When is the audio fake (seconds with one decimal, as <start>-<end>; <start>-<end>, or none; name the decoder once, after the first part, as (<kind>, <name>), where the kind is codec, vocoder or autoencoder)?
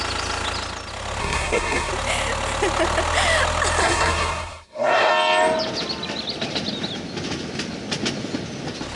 1.2-1.9 (codec, SNAC); 3.8-5.1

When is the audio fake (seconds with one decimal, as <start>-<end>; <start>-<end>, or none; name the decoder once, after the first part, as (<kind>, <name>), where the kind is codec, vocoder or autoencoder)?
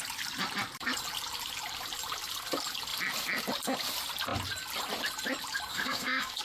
5.7-6.4 (codec, SNAC)